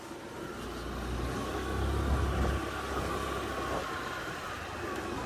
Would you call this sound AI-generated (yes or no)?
no